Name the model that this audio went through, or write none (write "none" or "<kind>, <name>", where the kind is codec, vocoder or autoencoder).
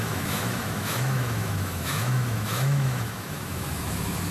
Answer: autoencoder, DAC-VAE